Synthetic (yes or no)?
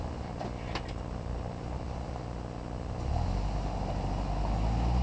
no